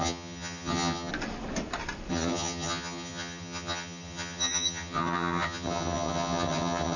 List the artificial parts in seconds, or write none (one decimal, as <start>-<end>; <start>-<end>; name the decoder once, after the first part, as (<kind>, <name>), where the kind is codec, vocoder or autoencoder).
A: 0.0-1.1 (vocoder, HiFi-GAN); 2.1-7.0